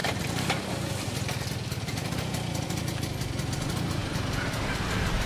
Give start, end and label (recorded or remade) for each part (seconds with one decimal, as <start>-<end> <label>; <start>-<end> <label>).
0.0-5.3 recorded